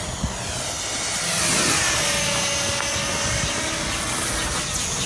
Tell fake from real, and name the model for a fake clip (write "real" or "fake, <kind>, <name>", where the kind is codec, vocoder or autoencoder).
real